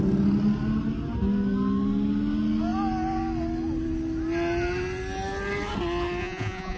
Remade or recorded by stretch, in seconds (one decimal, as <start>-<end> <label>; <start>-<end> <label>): 0.0-6.2 recorded; 6.2-6.8 remade